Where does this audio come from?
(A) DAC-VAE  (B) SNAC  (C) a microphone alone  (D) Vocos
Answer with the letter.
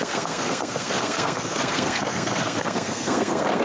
B